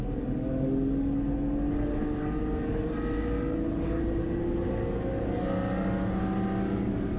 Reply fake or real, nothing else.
real